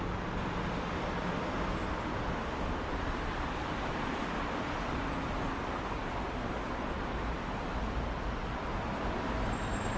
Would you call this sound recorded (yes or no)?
yes